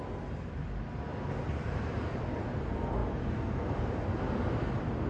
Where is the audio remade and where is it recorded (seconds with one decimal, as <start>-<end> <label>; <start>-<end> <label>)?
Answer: 0.0-5.1 recorded